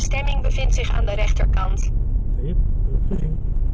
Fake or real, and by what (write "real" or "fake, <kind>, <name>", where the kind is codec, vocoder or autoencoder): real